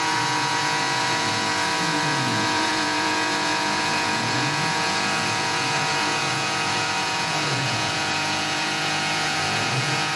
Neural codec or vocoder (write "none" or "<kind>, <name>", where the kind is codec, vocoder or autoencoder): vocoder, Vocos